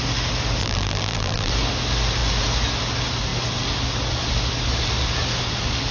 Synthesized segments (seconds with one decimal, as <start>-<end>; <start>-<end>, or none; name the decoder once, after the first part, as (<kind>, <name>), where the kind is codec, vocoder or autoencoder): 0.6-1.5 (vocoder, BigVGAN v2)